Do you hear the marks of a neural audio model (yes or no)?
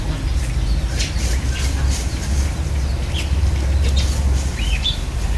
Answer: no